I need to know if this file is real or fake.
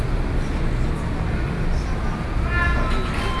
real